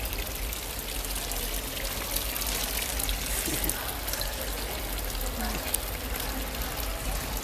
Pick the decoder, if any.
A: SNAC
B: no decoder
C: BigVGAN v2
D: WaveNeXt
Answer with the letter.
B